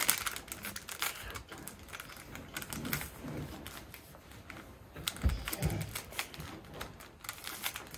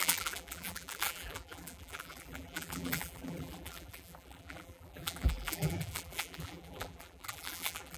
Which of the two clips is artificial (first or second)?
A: second